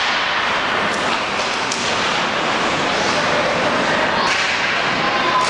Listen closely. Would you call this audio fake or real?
real